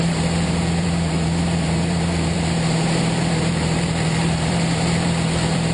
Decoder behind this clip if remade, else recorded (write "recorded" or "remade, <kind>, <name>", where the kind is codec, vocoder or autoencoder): remade, vocoder, BigVGAN v2